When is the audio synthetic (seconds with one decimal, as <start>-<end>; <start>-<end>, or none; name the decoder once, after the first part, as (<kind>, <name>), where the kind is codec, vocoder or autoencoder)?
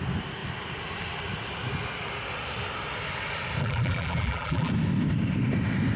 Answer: 3.6-4.7 (vocoder, BigVGAN v2)